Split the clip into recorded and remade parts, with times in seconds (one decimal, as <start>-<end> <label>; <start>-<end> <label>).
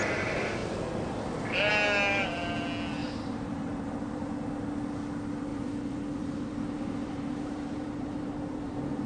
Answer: 0.0-3.0 recorded; 3.0-4.3 remade; 4.3-5.5 recorded; 5.5-9.1 remade